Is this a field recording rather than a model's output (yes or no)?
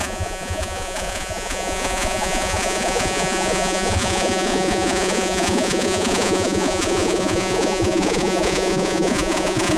no